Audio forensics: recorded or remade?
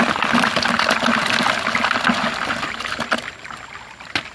recorded